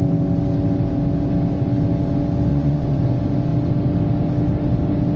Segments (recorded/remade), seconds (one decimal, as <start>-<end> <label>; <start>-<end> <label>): 0.0-2.5 recorded; 2.5-3.0 remade; 3.0-5.2 recorded